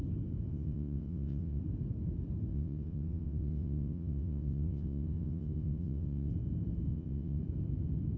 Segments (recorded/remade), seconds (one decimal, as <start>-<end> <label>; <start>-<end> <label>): 0.0-0.5 recorded; 0.5-1.6 remade; 1.6-2.5 recorded; 2.5-6.3 remade; 6.3-6.9 recorded; 6.9-7.4 remade; 7.4-8.2 recorded